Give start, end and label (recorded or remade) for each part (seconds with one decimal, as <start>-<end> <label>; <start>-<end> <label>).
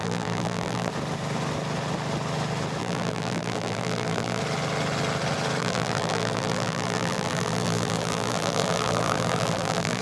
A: 0.0-0.9 remade; 0.9-2.8 recorded; 2.8-4.4 remade; 4.4-5.6 recorded; 5.6-10.0 remade